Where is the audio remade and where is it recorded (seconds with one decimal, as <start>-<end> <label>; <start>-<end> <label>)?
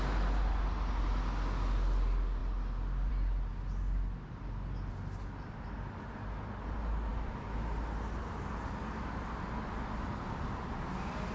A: 0.0-11.3 recorded